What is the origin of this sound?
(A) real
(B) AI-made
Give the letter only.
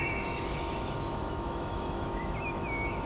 B